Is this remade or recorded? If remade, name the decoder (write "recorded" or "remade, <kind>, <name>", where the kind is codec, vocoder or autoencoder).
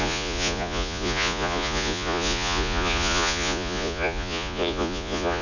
remade, vocoder, Vocos